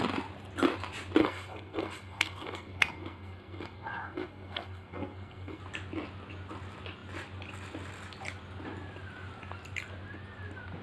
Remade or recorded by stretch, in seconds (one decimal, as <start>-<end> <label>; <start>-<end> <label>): 0.0-1.2 recorded; 1.2-5.6 remade; 5.6-10.8 recorded